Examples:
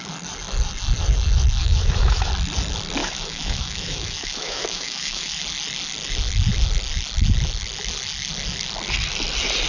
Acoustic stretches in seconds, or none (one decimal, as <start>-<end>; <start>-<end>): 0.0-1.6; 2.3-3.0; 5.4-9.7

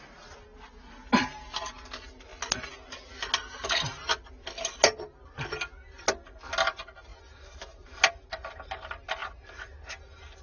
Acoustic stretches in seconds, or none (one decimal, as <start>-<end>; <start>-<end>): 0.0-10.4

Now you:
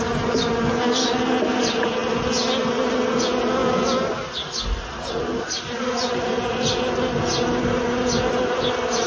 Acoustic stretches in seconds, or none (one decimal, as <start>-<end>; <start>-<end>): 0.0-9.1

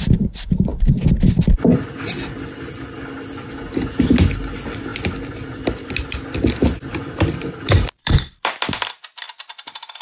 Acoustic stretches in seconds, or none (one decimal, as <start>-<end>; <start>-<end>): 0.0-4.9; 8.9-10.0

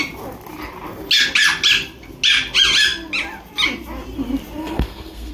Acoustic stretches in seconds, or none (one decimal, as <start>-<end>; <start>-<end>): 0.0-4.6

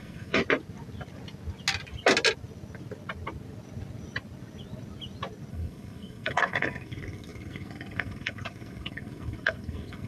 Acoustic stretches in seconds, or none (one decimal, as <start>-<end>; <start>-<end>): 0.4-5.5

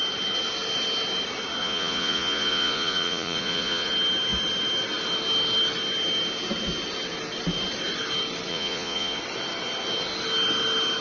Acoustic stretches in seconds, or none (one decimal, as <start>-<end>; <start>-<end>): 0.0-1.6; 3.9-8.5; 9.2-11.0